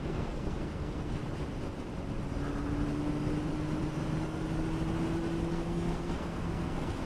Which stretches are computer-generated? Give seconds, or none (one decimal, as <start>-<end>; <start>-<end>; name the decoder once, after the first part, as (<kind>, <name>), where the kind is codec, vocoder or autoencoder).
0.0-1.2 (codec, SNAC); 5.5-7.1